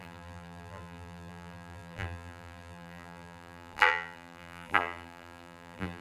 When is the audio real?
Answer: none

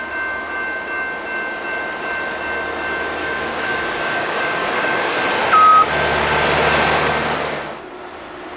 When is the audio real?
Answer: 0.0-3.2; 5.2-8.6

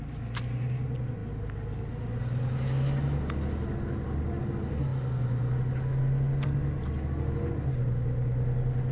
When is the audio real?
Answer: 0.0-8.9

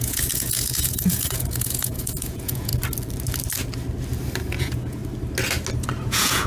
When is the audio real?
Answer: 2.7-4.6; 5.0-6.0

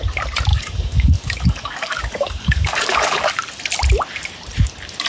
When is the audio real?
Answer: 0.0-0.5; 3.3-5.1

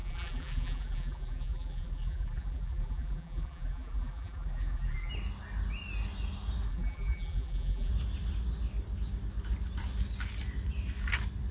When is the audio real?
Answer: 5.1-6.7; 7.9-11.5

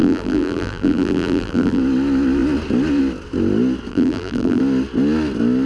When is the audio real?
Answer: 1.8-3.9; 4.6-5.7